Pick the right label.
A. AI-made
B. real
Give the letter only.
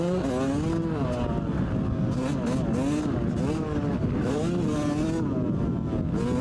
B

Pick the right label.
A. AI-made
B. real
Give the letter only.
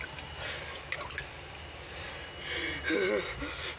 B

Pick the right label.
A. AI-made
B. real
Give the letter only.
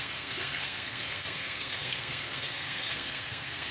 A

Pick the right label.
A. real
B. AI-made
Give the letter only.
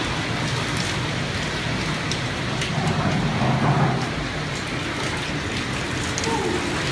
A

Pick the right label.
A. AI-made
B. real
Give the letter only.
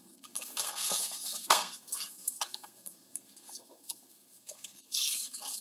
A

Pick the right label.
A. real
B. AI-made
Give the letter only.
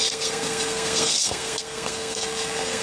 B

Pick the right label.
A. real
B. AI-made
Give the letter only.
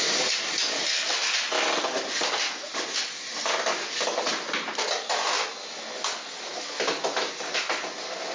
A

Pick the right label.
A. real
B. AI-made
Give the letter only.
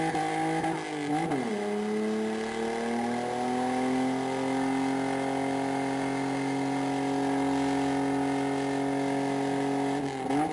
A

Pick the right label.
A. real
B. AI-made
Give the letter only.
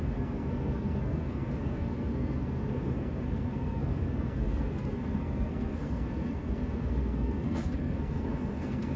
B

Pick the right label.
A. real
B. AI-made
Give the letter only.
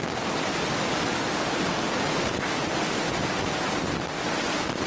A